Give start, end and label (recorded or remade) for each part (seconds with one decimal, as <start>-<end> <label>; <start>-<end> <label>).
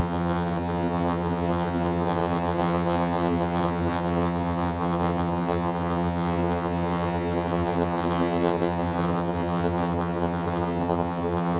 0.0-11.6 remade